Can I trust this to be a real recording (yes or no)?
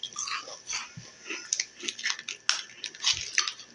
yes